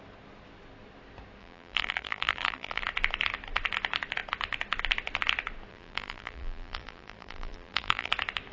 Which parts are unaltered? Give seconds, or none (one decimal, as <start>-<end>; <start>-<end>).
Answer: 0.0-1.4; 2.8-5.7; 8.1-8.5